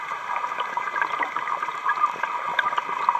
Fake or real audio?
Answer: fake